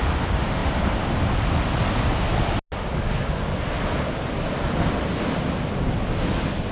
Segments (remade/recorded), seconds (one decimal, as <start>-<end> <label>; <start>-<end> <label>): 0.0-6.7 recorded